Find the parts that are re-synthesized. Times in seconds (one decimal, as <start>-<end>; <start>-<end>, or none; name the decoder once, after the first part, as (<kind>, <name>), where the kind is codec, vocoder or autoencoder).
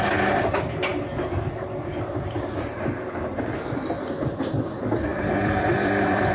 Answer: 0.9-3.4 (vocoder, BigVGAN v2); 5.1-6.3